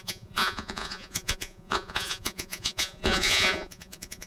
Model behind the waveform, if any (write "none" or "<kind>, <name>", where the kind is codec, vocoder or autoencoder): vocoder, Vocos